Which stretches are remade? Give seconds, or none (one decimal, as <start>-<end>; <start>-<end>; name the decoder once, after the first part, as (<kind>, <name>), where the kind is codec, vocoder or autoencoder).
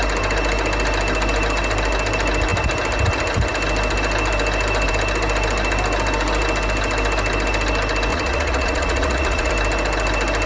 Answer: 8.1-9.5 (vocoder, Vocos)